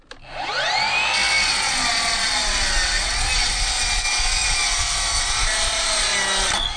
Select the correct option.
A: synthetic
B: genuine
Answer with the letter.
B